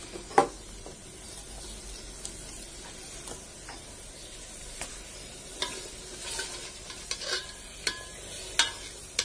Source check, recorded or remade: recorded